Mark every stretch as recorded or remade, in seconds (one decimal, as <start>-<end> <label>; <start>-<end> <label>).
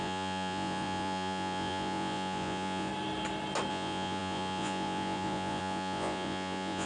0.0-2.9 remade; 2.9-3.7 recorded; 3.7-6.9 remade